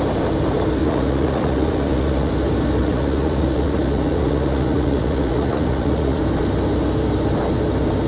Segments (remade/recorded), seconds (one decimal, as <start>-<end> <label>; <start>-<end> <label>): 0.0-0.8 recorded; 0.8-2.3 remade; 2.3-2.8 recorded; 2.8-6.2 remade; 6.2-8.1 recorded

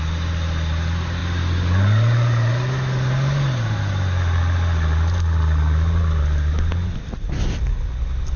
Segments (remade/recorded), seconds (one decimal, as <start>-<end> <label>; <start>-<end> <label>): 0.0-8.4 recorded

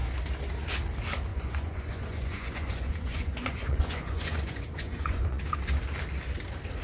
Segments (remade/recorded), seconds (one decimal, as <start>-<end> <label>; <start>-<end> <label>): 0.0-1.3 recorded; 1.3-5.4 remade; 5.4-6.8 recorded

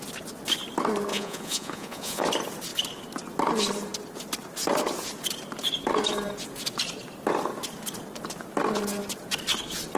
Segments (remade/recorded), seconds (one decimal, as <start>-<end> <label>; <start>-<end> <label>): 0.0-1.1 recorded; 1.1-2.2 remade; 2.2-10.0 recorded

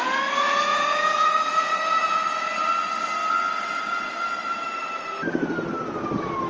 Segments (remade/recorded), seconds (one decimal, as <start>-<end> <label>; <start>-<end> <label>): 0.0-0.7 recorded; 0.7-2.2 remade; 2.2-6.5 recorded

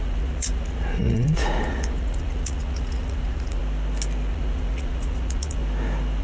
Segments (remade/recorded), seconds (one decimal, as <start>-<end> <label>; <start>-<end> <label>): 0.0-3.6 remade; 3.6-4.3 recorded; 4.3-5.6 remade; 5.6-6.2 recorded